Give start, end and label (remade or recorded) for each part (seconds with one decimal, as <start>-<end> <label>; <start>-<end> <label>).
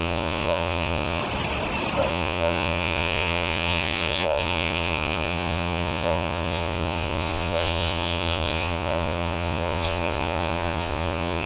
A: 0.0-1.2 remade; 1.2-2.1 recorded; 2.1-11.5 remade